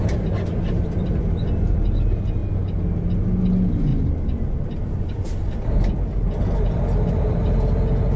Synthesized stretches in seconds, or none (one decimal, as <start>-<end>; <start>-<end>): 0.0-1.2; 3.9-6.4